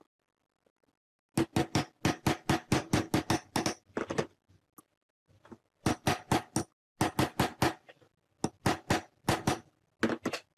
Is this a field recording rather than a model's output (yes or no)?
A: yes